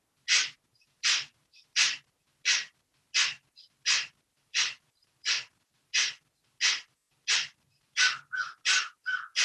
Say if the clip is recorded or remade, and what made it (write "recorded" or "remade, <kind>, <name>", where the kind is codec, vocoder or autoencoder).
recorded